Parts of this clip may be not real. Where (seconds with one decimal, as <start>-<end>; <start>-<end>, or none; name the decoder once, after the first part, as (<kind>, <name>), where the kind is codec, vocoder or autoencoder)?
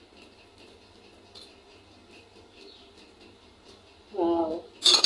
none